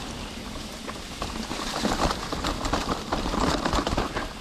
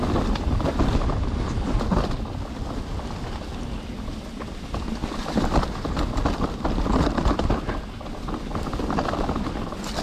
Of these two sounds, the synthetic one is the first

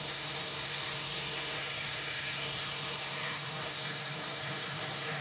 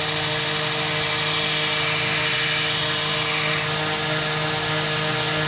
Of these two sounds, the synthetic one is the first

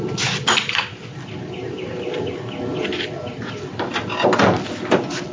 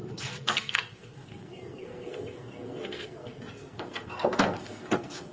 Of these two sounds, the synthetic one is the second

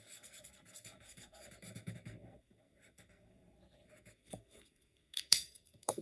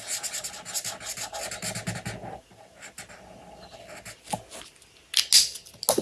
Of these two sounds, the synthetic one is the first